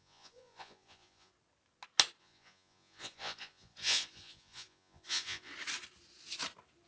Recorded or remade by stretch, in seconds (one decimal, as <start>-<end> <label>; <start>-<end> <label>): 0.0-1.3 remade; 1.3-2.2 recorded; 2.2-5.5 remade; 5.5-6.9 recorded